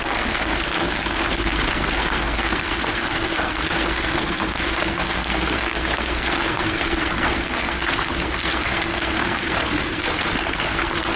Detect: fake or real fake